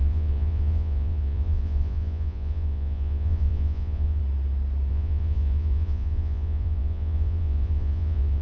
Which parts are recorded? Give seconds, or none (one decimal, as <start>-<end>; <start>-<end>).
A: 4.2-4.9